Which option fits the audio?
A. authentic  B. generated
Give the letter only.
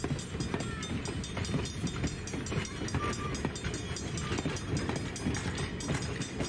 A